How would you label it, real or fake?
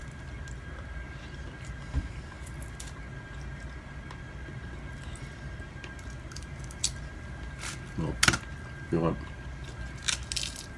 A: real